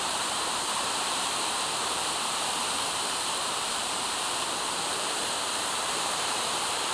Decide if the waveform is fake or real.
fake